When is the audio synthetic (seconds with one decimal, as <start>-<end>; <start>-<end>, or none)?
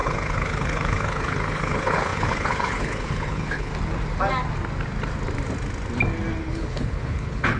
0.0-3.7; 6.4-7.6